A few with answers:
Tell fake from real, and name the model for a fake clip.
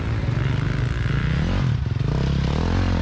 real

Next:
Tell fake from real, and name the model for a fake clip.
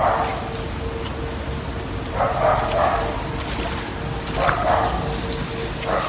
real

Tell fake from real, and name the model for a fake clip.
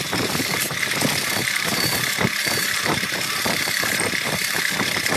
fake, vocoder, BigVGAN v2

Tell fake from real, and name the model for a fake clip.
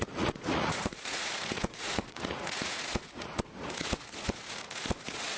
fake, vocoder, Vocos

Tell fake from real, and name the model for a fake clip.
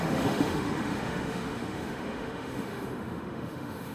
fake, autoencoder, DAC-VAE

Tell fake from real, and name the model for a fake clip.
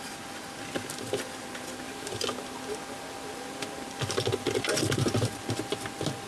real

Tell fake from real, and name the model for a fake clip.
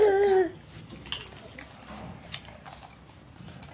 real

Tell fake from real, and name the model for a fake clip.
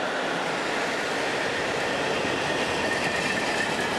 real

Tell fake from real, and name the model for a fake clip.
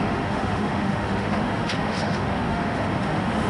fake, autoencoder, DAC-VAE